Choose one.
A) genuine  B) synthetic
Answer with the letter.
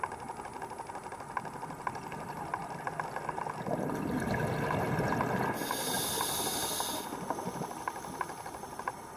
A